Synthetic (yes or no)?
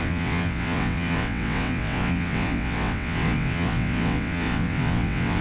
yes